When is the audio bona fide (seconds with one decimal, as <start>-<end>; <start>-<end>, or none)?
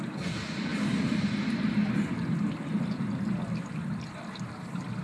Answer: 0.0-5.0